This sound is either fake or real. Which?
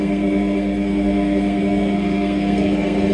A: fake